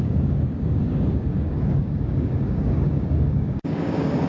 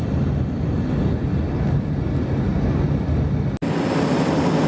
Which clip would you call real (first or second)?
second